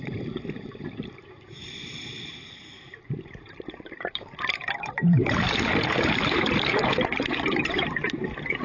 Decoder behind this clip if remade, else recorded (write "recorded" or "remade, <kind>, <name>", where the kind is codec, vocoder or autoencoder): remade, vocoder, BigVGAN v2